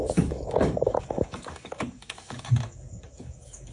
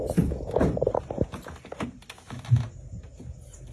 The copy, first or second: first